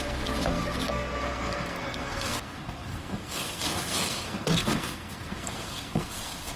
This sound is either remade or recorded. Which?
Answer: remade